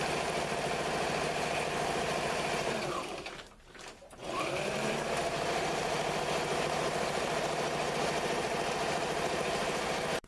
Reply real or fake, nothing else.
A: fake